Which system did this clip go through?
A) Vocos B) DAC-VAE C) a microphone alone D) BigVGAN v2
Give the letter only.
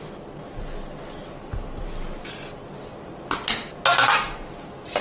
C